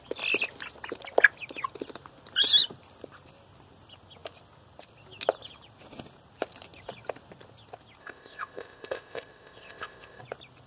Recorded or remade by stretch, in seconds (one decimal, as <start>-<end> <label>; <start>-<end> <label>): 0.0-8.0 recorded; 8.0-10.2 remade; 10.2-10.7 recorded